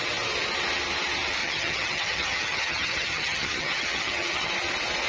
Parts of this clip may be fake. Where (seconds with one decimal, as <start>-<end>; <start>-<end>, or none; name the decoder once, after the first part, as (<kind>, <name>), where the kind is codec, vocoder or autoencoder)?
1.4-4.5 (vocoder, HiFi-GAN)